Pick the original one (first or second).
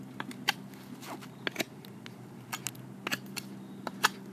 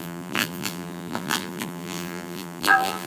first